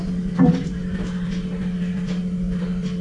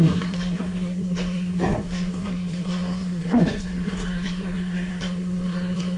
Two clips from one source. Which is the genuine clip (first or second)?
first